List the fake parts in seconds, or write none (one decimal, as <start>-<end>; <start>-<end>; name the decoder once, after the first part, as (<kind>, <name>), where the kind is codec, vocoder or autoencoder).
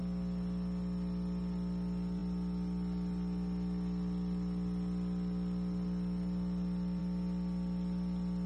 none